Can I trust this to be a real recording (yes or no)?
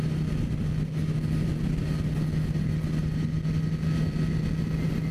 yes